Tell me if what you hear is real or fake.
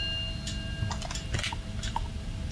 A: real